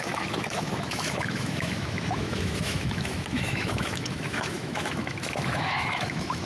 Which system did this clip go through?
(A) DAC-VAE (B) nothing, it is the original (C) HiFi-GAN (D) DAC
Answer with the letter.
A